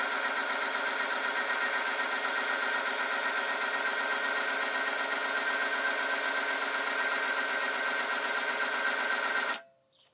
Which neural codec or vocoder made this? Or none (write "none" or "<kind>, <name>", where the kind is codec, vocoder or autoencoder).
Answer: none